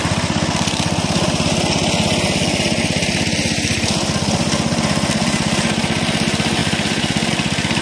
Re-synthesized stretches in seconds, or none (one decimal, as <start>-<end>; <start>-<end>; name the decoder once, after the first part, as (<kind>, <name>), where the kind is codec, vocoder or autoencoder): 6.6-7.3 (vocoder, BigVGAN v2)